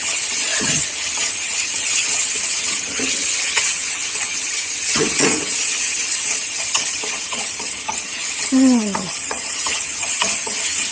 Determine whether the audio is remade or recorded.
remade